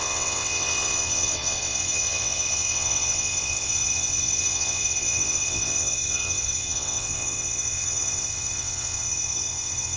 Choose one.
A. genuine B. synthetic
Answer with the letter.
B